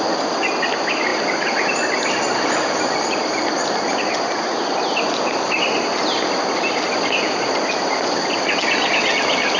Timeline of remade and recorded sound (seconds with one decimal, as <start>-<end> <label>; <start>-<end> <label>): 0.0-9.6 recorded